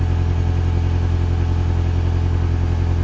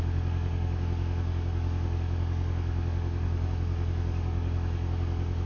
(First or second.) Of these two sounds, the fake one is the second